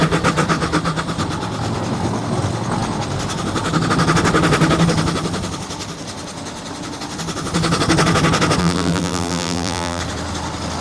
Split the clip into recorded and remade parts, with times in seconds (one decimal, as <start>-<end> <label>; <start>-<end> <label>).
0.0-8.6 recorded; 8.6-10.0 remade; 10.0-10.8 recorded